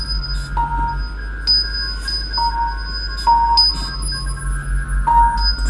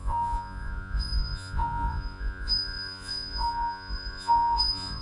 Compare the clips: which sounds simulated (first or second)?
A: second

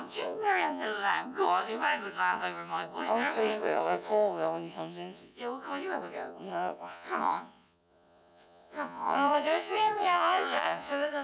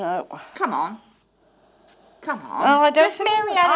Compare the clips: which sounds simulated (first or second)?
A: first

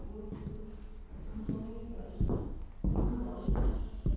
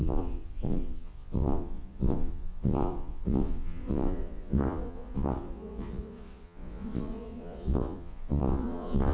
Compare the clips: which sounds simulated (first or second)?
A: second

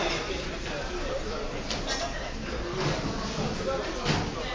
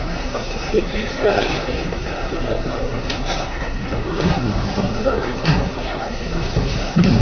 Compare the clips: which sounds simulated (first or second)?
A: second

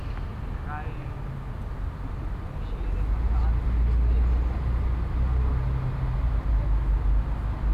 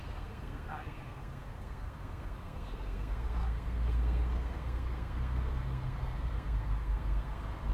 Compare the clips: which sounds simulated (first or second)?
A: second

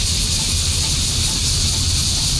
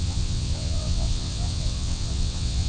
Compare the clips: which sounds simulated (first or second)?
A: second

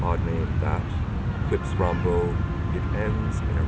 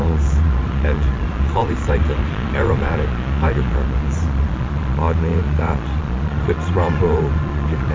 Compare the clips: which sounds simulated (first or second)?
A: second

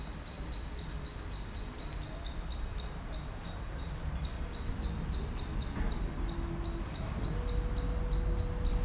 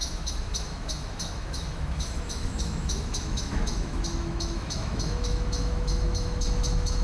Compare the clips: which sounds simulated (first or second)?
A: second